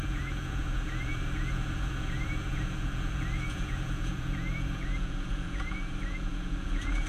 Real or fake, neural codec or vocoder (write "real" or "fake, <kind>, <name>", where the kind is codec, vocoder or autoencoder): fake, vocoder, Vocos